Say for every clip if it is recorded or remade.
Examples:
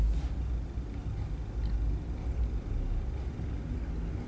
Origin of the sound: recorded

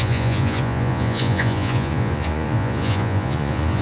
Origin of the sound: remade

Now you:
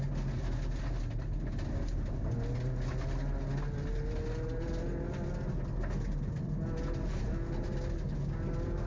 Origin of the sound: recorded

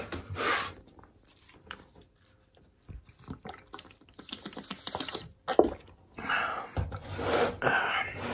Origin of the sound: recorded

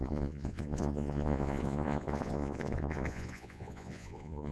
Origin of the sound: remade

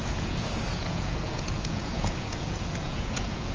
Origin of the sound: remade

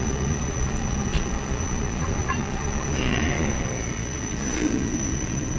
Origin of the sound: remade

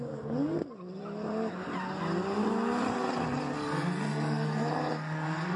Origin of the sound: recorded